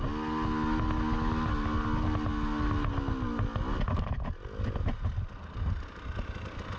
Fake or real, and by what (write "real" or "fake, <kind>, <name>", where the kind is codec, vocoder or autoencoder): real